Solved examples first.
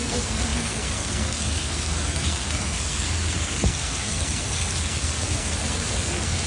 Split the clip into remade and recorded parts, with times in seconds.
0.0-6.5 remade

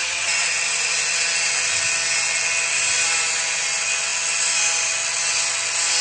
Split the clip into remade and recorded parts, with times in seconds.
0.0-0.6 remade; 0.6-6.0 recorded

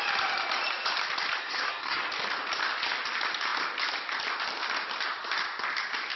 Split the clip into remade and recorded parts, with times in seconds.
0.0-1.4 recorded; 1.4-2.0 remade; 2.0-6.2 recorded

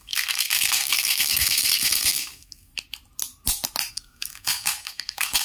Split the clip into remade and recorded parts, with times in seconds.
0.0-2.7 remade; 2.7-3.9 recorded; 3.9-5.4 remade

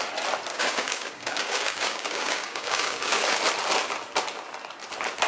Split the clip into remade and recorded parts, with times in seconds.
0.0-0.5 recorded; 0.5-3.4 remade; 3.4-5.3 recorded

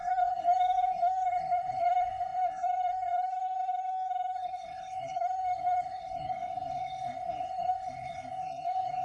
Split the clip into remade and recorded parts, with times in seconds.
0.0-9.0 remade

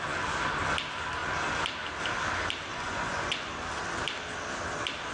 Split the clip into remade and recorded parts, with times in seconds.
0.0-2.7 recorded; 2.7-3.5 remade; 3.5-5.1 recorded